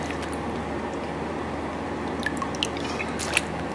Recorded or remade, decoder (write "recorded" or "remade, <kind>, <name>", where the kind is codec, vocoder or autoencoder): recorded